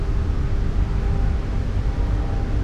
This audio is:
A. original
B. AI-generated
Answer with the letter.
A